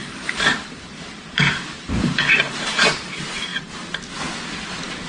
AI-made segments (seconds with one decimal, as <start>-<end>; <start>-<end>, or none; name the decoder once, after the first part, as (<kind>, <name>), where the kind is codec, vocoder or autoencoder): 0.0-3.1 (vocoder, BigVGAN v2)